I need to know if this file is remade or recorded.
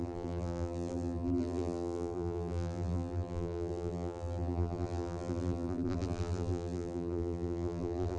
remade